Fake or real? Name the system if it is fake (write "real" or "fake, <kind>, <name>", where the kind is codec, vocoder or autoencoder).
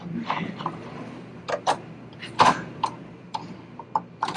fake, vocoder, BigVGAN v2